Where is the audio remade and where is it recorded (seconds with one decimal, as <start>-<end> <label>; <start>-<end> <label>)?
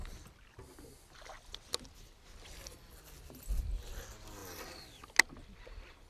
0.0-6.1 recorded